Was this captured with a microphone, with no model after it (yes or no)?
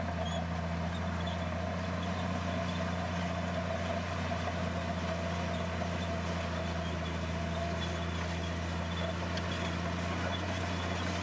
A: yes